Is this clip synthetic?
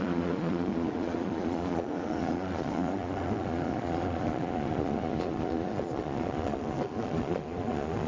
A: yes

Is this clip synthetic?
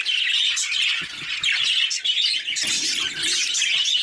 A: no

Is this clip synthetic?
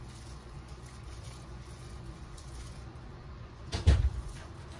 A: yes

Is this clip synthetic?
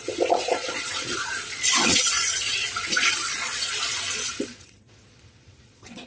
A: yes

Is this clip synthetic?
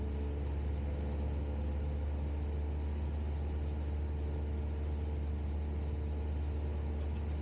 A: no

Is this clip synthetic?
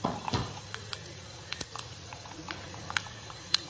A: yes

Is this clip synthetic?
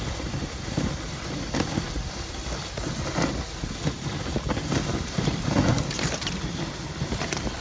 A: no